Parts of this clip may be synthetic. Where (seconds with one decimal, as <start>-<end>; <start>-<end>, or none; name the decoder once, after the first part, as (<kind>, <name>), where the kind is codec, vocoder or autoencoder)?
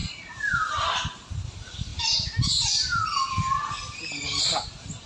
0.0-0.5 (vocoder, BigVGAN v2)